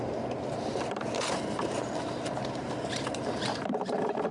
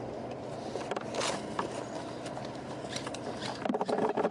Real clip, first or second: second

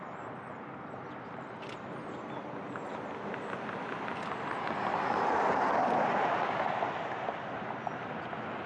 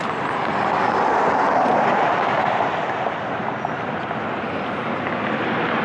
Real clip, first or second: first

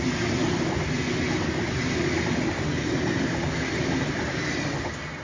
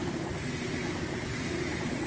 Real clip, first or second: first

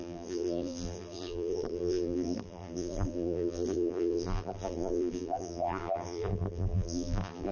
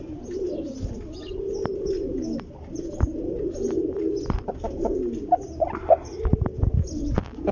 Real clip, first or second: second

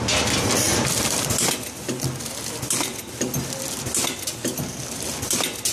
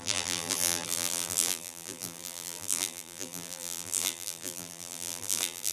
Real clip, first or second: first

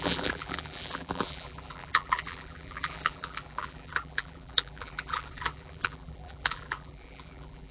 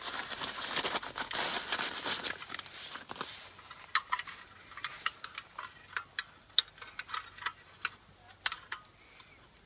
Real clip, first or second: second